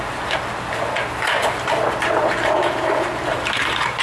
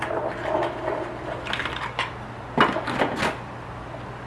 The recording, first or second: second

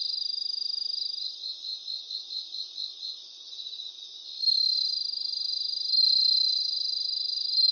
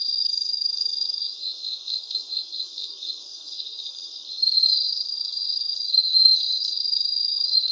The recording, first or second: first